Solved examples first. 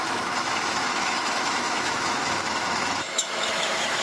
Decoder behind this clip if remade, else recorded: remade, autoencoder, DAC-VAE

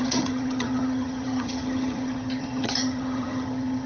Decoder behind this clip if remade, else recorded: remade, vocoder, HiFi-GAN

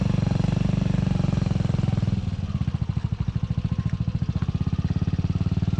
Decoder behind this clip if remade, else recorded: recorded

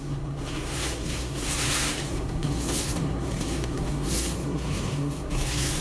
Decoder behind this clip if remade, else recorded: remade, codec, SNAC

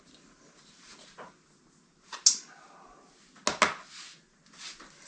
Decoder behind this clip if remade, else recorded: recorded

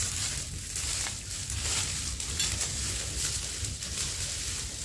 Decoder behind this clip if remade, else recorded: recorded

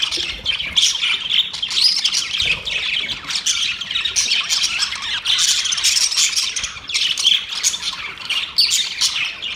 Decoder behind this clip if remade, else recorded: recorded